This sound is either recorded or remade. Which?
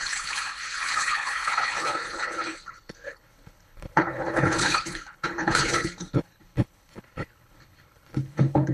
remade